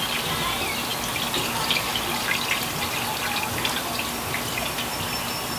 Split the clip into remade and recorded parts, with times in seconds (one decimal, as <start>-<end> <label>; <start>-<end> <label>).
0.0-5.6 recorded